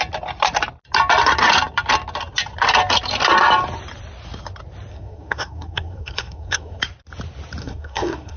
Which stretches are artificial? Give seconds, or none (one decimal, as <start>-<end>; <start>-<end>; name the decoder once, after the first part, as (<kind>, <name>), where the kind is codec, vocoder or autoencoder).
4.9-6.8 (codec, SNAC); 7.6-8.4

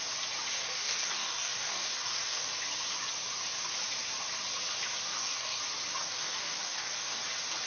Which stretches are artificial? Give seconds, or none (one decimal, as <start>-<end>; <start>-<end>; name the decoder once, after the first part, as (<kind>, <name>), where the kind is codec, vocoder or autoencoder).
0.5-2.5 (codec, DAC); 5.1-5.6; 6.0-7.2

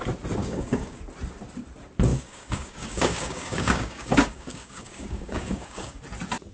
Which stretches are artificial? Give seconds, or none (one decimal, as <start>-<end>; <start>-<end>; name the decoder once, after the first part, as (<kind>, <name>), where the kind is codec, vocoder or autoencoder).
0.4-1.0 (codec, DAC); 2.1-6.0

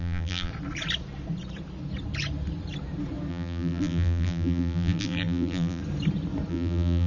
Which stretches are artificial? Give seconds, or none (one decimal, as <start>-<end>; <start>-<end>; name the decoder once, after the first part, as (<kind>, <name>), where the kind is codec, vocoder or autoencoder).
0.0-0.5 (vocoder, BigVGAN v2); 3.3-5.8; 6.5-7.1